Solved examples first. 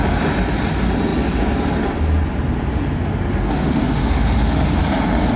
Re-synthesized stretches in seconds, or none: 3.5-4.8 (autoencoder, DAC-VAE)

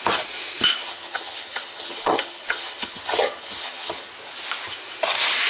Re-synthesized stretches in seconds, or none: 0.8-4.1 (vocoder, HiFi-GAN)

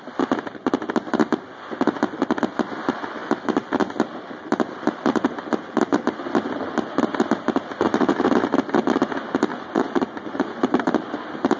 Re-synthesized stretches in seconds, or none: 9.5-10.9 (vocoder, Vocos)

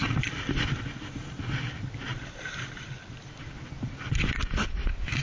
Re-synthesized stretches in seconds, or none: none

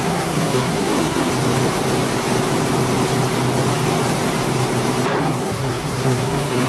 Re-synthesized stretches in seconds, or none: 0.0-1.3 (codec, SNAC); 5.2-6.7

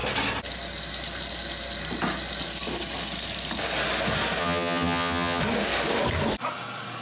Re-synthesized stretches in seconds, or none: 4.4-5.4 (vocoder, HiFi-GAN)

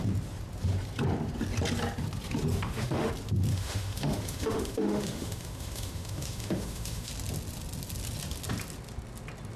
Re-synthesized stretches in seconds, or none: 2.5-3.1 (autoencoder, DAC-VAE); 3.5-7.1